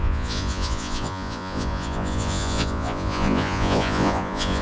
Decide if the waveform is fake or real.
fake